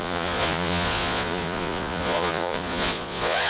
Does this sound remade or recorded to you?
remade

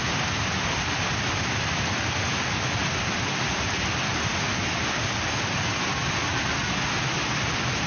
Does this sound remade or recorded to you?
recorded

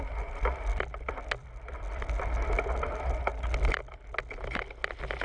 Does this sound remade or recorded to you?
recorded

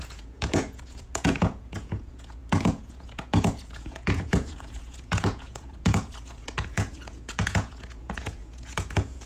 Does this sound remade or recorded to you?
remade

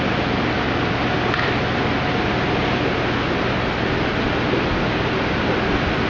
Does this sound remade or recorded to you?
recorded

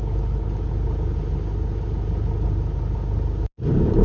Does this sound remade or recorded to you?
recorded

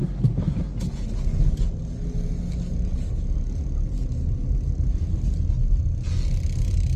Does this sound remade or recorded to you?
recorded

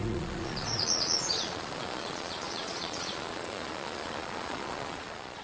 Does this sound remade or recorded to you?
remade